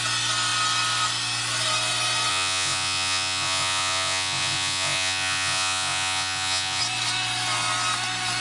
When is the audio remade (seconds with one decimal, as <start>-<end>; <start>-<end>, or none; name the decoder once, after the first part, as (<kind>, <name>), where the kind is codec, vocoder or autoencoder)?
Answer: 2.3-6.8 (vocoder, Vocos)